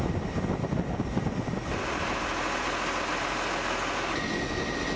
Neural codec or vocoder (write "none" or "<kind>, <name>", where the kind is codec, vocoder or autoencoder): none